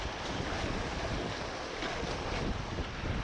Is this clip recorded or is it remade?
recorded